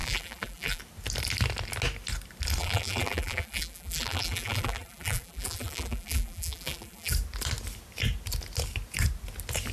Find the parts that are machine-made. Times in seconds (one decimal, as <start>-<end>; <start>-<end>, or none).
0.0-0.8; 2.6-7.1